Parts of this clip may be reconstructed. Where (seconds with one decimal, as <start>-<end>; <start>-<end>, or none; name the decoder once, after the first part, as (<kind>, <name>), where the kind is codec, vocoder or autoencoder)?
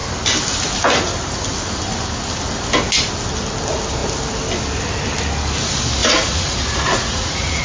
6.0-7.6 (vocoder, Vocos)